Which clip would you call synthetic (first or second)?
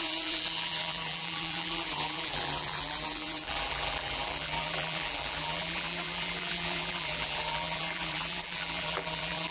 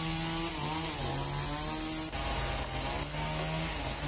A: first